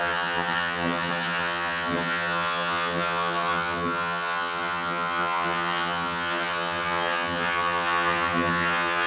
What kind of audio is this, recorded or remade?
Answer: remade